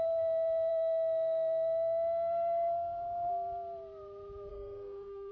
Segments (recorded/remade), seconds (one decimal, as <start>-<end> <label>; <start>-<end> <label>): 0.0-0.7 recorded; 0.7-3.3 remade; 3.3-4.5 recorded; 4.5-5.3 remade